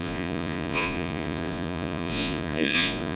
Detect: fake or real fake